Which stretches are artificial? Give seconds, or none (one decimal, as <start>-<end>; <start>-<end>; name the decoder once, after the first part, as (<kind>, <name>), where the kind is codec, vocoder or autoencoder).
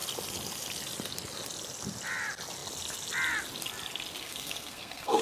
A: 4.2-5.2 (codec, SNAC)